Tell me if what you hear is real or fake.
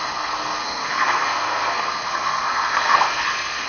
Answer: fake